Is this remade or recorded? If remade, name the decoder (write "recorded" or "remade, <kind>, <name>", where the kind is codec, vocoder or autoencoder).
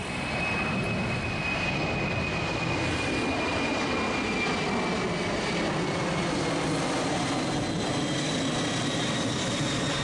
recorded